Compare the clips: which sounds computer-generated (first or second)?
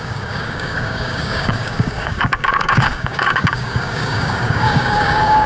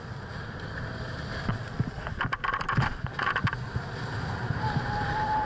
first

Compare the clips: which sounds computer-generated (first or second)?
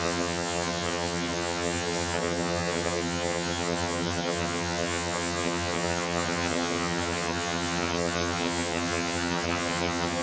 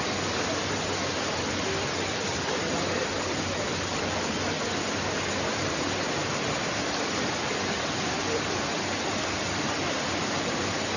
first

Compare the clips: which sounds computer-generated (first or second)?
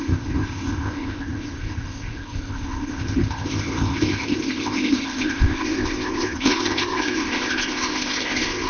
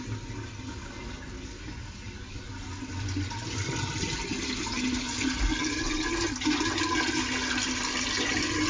first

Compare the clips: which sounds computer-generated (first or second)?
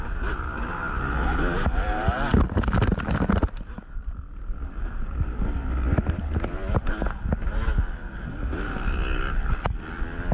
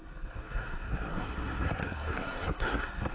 second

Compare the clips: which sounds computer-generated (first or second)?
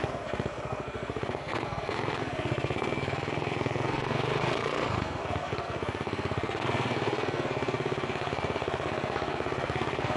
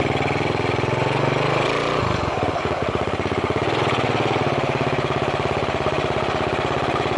first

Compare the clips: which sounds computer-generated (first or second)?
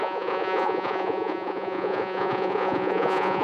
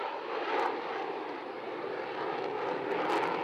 first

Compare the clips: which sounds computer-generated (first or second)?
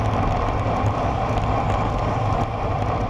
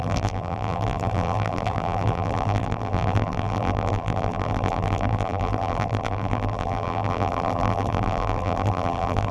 second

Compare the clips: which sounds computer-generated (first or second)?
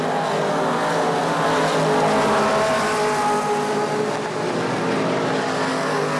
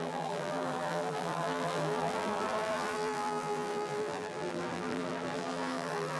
second